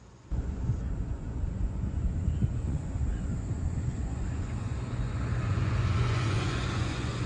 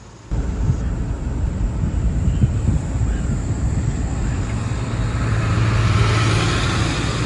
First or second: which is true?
second